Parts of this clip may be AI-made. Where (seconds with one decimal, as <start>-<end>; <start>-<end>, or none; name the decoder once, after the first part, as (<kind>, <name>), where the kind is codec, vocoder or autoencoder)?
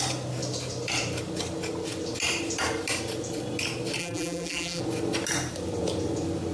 4.0-4.8 (vocoder, BigVGAN v2)